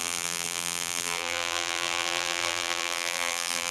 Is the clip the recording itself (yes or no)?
no